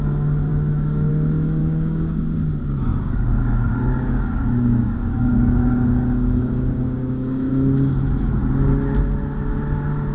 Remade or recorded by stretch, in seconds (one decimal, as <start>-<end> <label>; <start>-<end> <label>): 0.0-0.5 recorded; 0.5-1.1 remade; 1.1-1.6 recorded; 1.6-2.2 remade; 2.2-2.9 recorded; 2.9-7.5 remade; 7.5-10.1 recorded